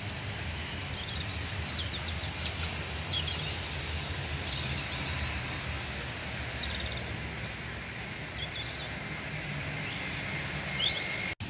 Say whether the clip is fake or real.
real